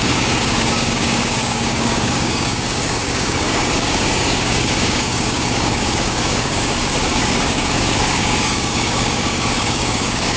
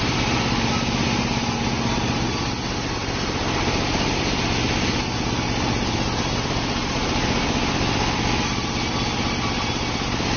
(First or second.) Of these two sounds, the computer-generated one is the first